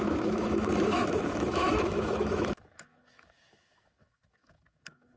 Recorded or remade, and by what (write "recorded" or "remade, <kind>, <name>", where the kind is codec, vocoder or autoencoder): remade, autoencoder, DAC-VAE